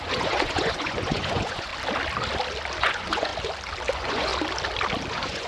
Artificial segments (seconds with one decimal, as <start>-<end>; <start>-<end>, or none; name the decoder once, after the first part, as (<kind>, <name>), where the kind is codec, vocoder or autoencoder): 0.0-1.7 (vocoder, Vocos); 2.8-3.3; 3.9-4.3; 5.1-5.5